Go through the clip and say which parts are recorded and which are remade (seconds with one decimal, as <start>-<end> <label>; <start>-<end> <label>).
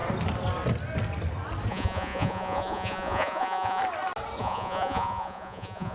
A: 0.0-1.7 recorded; 1.7-3.8 remade; 3.8-4.4 recorded; 4.4-5.9 remade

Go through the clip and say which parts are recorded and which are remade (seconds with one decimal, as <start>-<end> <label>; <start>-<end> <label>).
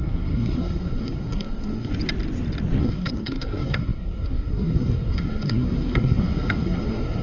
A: 0.0-1.9 remade; 1.9-2.8 recorded; 2.8-7.2 remade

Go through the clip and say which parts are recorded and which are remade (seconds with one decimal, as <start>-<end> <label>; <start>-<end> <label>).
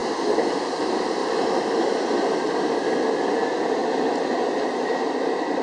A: 0.0-5.6 recorded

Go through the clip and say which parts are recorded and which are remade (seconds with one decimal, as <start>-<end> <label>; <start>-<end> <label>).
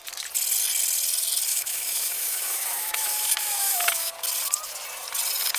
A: 0.0-1.5 recorded; 1.5-4.1 remade; 4.1-5.6 recorded